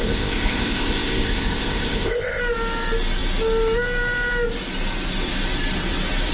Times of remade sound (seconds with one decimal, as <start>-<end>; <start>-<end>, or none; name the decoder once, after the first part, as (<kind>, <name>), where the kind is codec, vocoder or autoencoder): 0.0-2.4 (codec, ZipCodec)